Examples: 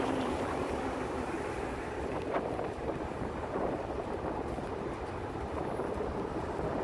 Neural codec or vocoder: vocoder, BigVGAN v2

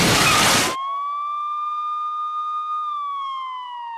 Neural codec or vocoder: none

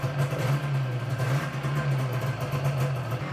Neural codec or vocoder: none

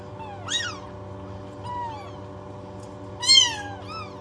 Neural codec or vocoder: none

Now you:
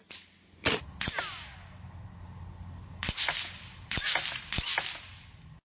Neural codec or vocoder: none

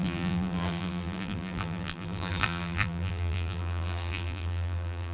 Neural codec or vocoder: vocoder, BigVGAN v2